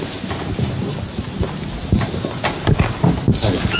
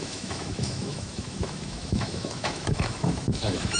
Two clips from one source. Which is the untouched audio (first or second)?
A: first